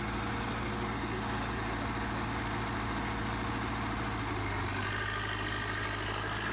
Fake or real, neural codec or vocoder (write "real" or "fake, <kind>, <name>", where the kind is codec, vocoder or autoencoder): real